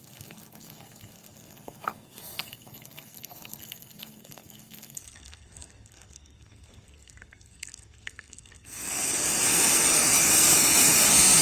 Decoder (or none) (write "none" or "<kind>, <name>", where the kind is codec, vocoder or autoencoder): codec, SNAC